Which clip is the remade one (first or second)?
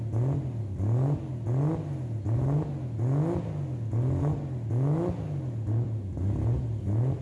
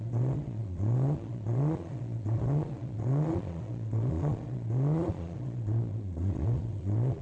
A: second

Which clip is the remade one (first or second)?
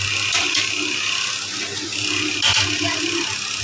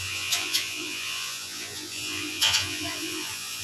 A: second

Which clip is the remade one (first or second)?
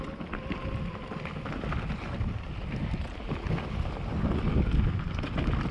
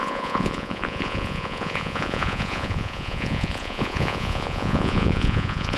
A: second